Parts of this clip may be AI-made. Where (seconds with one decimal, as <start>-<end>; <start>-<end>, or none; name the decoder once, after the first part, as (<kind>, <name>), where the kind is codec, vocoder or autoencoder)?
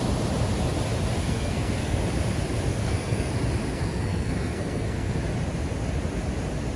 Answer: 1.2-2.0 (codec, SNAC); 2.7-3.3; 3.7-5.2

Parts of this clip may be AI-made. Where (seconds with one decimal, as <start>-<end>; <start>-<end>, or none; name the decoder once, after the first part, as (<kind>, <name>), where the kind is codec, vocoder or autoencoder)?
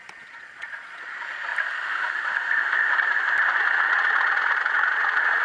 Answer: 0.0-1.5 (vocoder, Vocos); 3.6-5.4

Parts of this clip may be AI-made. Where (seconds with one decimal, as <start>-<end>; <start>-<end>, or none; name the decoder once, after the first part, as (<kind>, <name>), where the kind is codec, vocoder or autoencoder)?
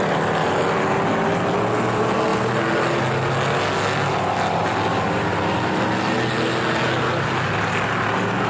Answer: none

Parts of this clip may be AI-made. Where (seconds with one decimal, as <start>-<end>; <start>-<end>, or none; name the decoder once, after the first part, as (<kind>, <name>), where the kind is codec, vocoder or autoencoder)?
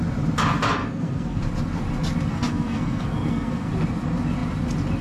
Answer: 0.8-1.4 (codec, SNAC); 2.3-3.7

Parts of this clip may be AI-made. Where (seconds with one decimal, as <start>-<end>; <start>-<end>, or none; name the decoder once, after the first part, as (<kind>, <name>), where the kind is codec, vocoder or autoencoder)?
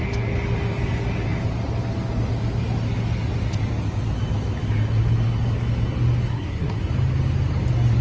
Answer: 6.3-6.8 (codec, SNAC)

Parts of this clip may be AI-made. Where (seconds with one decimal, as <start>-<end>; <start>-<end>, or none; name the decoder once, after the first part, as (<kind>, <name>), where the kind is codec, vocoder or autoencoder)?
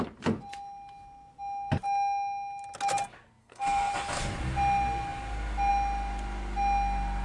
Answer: 3.4-3.9 (codec, SNAC)